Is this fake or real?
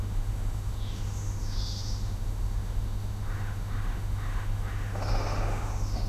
fake